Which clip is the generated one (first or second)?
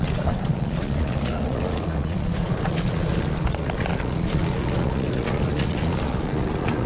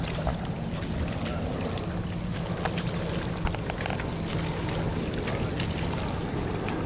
first